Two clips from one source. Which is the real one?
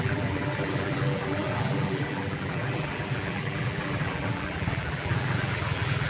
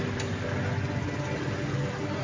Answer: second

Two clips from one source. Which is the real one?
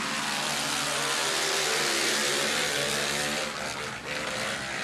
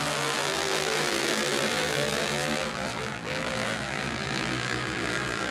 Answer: first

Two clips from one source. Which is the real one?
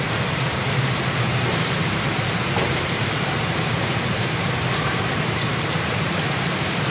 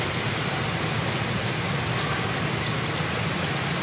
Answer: second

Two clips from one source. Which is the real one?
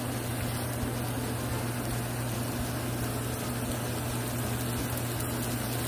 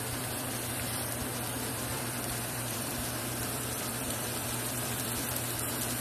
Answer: first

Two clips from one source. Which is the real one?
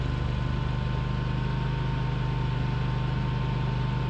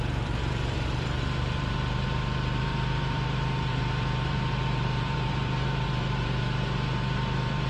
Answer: first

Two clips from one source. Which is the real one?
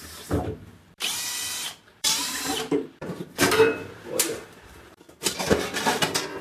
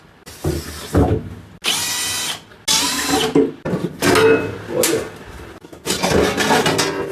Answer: second